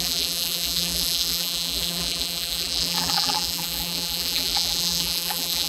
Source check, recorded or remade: remade